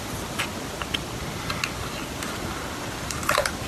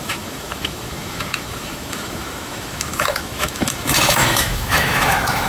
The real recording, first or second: first